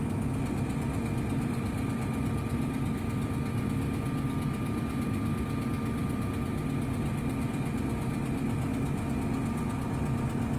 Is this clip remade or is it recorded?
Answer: recorded